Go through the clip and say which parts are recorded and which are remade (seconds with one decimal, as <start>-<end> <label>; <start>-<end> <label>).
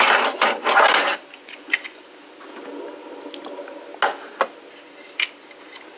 0.0-1.3 recorded; 1.3-2.0 remade; 2.0-6.0 recorded